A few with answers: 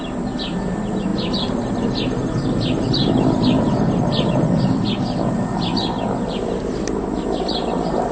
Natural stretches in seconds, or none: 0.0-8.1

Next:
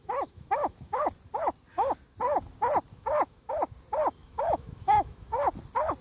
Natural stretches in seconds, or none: 1.0-2.9; 3.5-4.2; 5.5-6.0

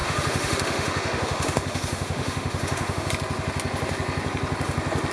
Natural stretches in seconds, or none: 3.1-5.1

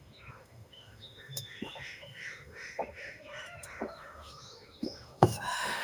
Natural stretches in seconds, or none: none

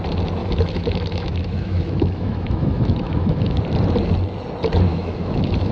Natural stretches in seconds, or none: 0.0-0.4; 3.6-4.9

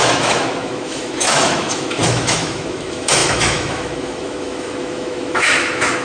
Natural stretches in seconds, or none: none

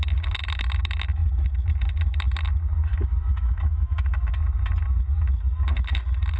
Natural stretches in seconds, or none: 0.0-2.9; 4.3-6.4